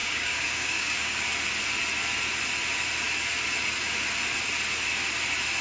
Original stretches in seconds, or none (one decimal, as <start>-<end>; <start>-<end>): 1.2-5.6